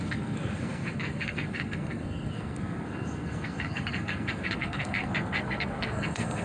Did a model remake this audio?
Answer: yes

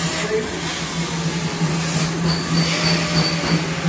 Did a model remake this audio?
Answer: no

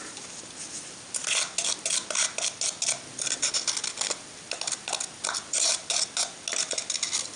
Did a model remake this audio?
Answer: no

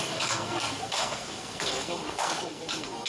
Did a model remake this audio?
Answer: yes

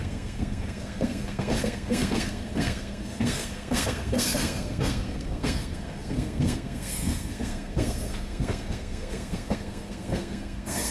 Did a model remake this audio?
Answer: yes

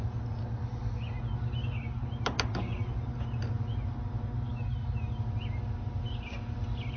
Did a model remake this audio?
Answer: no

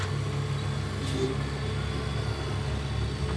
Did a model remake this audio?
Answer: no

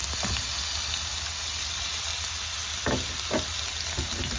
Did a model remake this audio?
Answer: no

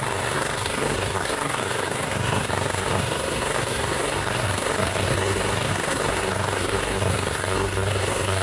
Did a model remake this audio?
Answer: yes